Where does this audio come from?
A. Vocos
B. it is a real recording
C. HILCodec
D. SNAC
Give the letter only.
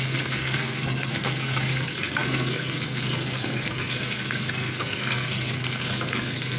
D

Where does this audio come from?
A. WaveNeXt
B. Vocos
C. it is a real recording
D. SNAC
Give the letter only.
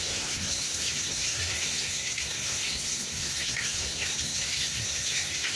D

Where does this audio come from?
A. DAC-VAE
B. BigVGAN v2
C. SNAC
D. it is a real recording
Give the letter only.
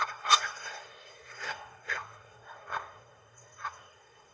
C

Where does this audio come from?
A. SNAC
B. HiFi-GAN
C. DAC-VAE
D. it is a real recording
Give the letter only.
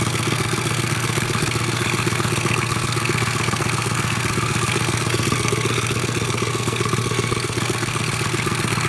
A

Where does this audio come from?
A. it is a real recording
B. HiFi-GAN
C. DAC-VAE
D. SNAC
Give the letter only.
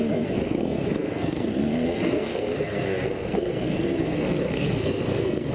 D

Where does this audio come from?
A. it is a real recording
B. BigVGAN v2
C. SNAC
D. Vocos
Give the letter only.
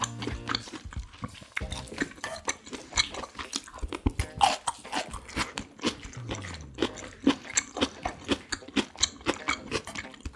A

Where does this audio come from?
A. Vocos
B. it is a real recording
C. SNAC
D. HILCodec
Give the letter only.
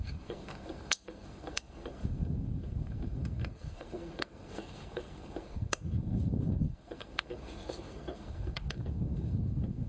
C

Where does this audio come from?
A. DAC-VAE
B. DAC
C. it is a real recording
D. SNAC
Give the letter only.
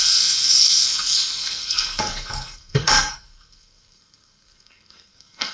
D